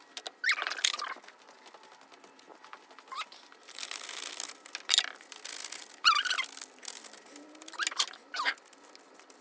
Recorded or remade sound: recorded